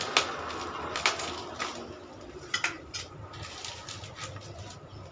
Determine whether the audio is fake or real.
real